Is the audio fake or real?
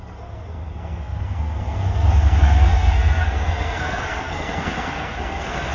fake